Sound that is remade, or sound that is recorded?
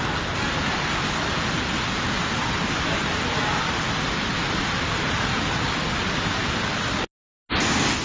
recorded